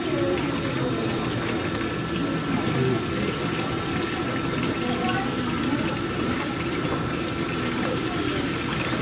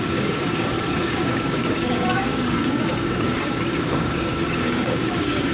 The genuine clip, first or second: first